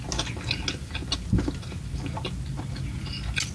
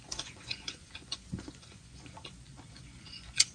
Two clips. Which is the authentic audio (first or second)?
first